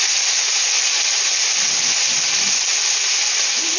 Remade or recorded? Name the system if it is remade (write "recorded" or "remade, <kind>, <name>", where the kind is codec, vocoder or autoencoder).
recorded